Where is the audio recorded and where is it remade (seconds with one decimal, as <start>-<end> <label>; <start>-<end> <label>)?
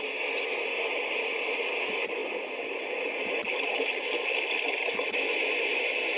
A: 0.0-6.2 recorded